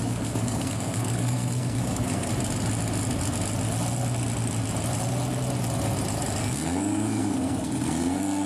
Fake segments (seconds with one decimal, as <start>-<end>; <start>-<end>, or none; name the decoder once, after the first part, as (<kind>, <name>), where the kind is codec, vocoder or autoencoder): 0.0-2.3 (codec, SNAC); 6.4-8.5